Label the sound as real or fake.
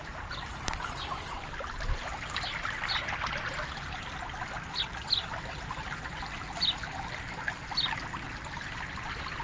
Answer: real